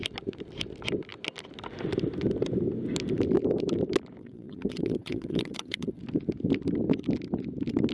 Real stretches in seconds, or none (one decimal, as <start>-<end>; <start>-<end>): 0.0-4.2; 6.0-7.9